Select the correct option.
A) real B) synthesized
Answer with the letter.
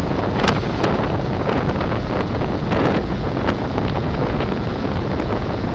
B